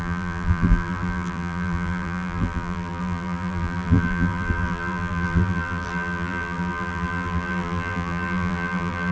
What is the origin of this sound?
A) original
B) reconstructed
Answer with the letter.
B